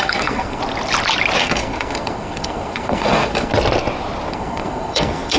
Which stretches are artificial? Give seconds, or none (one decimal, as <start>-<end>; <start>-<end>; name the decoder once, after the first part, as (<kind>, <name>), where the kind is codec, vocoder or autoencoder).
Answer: 0.0-0.6 (codec, SNAC); 1.4-3.5; 4.3-5.4